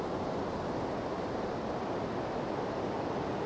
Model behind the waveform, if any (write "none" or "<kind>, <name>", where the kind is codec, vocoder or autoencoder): none